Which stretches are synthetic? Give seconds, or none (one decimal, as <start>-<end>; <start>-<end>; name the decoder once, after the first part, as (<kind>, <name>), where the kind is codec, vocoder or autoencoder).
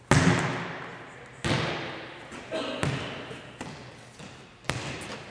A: none